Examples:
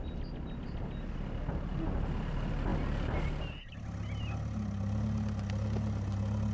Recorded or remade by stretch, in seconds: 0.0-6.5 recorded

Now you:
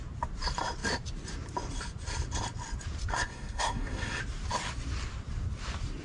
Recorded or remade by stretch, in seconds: 0.0-3.1 recorded; 3.1-4.2 remade; 4.2-6.0 recorded

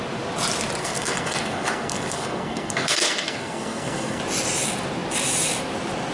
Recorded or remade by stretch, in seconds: 0.0-0.8 recorded; 0.8-4.2 remade; 4.2-6.1 recorded

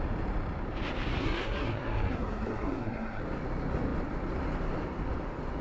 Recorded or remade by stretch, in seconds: 0.0-1.2 recorded; 1.2-3.2 remade; 3.2-5.6 recorded

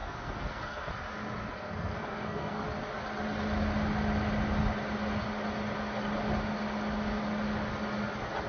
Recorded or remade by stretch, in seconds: 0.0-0.9 remade; 0.9-1.5 recorded; 1.5-2.6 remade; 2.6-8.5 recorded

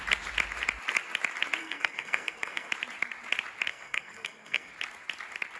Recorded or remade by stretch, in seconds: 0.0-1.6 recorded; 1.6-2.7 remade; 2.7-3.7 recorded; 3.7-4.7 remade; 4.7-5.6 recorded